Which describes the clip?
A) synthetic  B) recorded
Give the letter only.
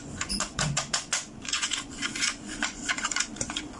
A